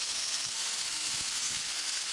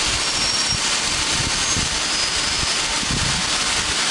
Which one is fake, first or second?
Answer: first